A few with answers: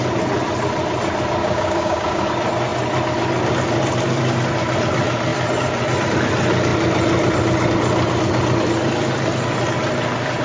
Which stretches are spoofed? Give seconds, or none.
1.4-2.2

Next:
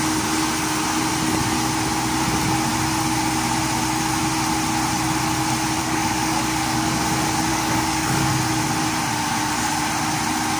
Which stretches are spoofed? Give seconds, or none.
5.8-7.0; 7.5-8.3